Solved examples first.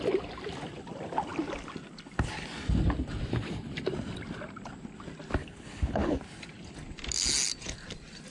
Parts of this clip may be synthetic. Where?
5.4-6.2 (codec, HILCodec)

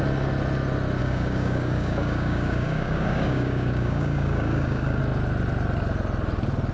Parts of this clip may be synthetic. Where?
1.0-5.0 (codec, DAC)

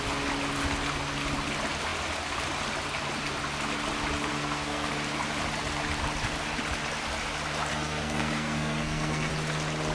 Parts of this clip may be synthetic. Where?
4.3-4.9 (codec, SNAC); 7.7-9.3

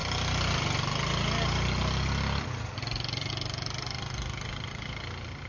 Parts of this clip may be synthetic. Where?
none

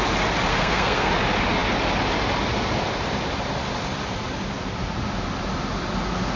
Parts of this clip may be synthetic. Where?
0.5-1.1 (codec, SNAC)

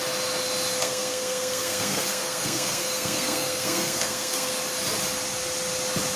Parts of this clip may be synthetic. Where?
0.8-4.5 (codec, SNAC)